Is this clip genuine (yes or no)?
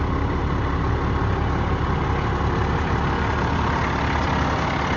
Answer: yes